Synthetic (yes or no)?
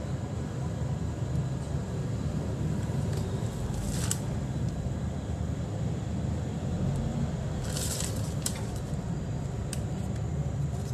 yes